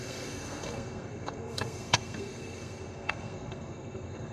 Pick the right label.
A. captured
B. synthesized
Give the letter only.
B